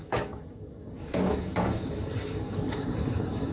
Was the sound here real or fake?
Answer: fake